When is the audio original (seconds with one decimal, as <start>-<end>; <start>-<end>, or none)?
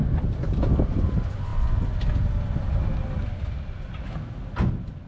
0.0-5.1